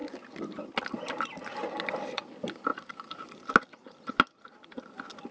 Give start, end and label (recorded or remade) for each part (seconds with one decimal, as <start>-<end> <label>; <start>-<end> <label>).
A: 0.0-5.3 recorded